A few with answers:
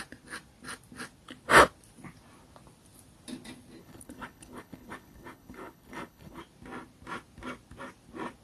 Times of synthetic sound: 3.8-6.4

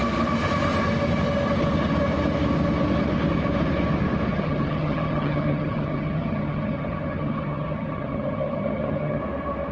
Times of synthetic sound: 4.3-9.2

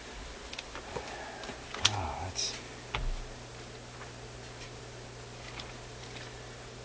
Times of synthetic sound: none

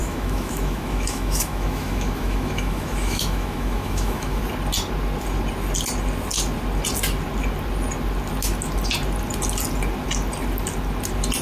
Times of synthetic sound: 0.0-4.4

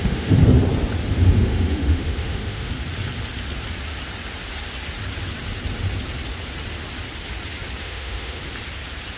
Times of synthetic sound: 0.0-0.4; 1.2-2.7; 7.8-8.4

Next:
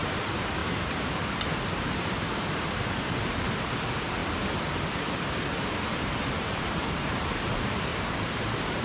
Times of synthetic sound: 0.0-4.2; 5.3-8.8